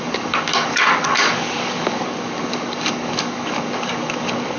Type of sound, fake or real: fake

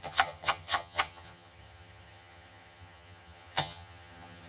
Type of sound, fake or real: fake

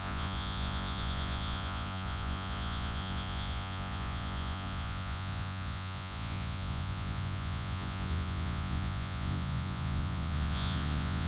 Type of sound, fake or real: fake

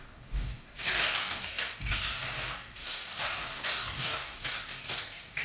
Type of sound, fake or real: fake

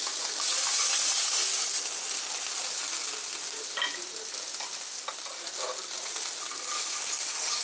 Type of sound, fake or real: real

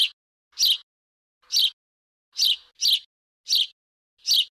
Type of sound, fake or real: real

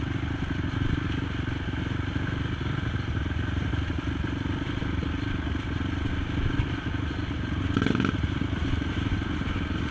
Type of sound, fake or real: real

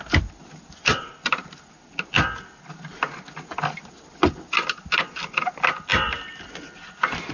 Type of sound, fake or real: real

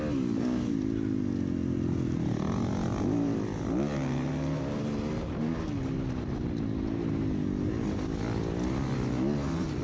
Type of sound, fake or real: real